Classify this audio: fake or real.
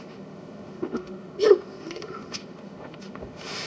fake